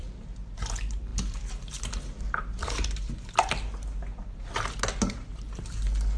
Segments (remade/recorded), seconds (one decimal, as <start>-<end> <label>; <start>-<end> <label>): 0.0-6.2 recorded